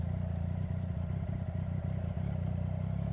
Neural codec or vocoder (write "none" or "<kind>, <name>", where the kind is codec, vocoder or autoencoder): none